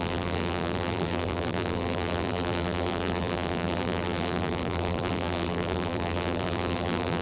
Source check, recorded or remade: remade